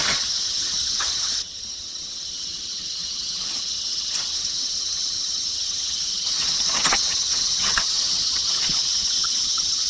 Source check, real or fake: fake